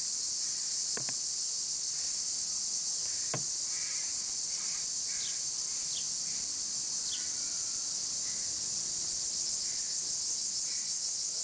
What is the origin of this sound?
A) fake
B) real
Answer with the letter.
B